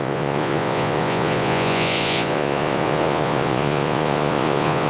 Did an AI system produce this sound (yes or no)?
yes